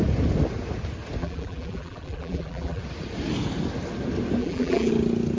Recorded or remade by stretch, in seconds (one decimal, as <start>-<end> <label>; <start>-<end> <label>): 0.0-1.2 recorded; 1.2-2.8 remade; 2.8-4.4 recorded; 4.4-4.9 remade; 4.9-5.4 recorded